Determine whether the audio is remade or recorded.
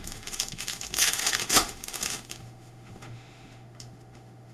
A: remade